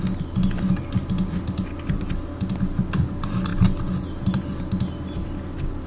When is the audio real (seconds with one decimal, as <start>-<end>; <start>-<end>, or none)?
0.0-5.9